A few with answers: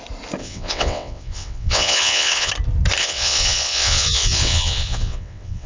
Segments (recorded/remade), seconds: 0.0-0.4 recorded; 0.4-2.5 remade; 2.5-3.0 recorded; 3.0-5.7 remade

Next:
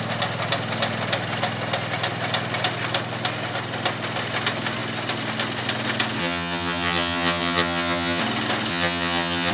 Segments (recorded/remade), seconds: 0.0-6.2 recorded; 6.2-8.2 remade; 8.2-8.7 recorded; 8.7-9.5 remade

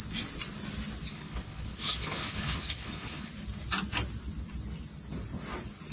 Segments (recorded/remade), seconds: 0.0-1.1 recorded; 1.1-3.3 remade; 3.3-5.9 recorded

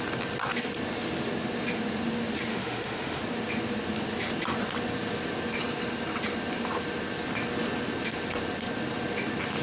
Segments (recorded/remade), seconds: 0.0-2.5 recorded; 2.5-3.2 remade; 3.2-9.6 recorded

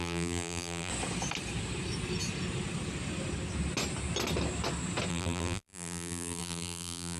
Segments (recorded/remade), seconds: 0.0-0.9 remade; 0.9-5.1 recorded; 5.1-7.2 remade